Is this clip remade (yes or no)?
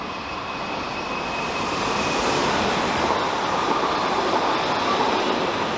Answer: no